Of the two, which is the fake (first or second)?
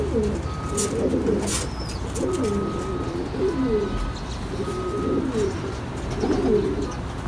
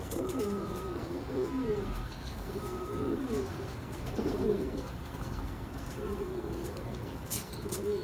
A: second